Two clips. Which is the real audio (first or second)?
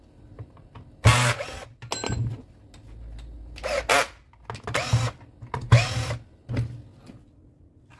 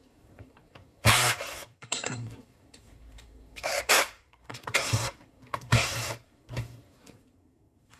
first